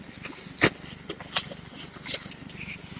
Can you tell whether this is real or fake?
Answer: real